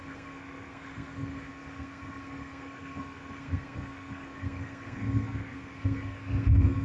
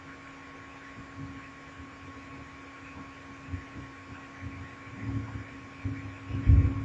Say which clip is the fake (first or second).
first